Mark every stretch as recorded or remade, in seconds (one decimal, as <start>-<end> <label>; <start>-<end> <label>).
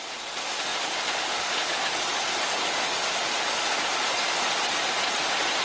0.0-5.6 recorded